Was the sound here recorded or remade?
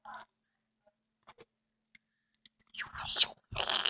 recorded